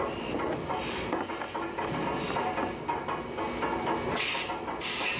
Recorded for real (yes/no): yes